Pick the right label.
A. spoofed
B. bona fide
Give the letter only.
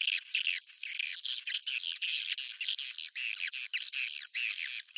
B